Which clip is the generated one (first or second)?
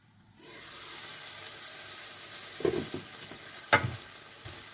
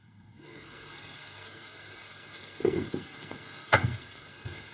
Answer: second